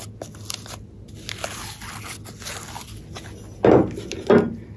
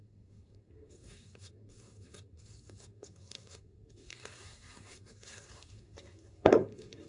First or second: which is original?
first